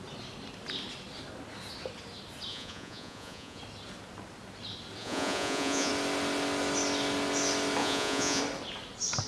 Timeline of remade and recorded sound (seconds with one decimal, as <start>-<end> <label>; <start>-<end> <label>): 0.0-2.5 recorded; 2.5-3.6 remade; 3.6-5.0 recorded; 5.0-5.9 remade; 5.9-7.8 recorded; 7.8-8.4 remade; 8.4-9.3 recorded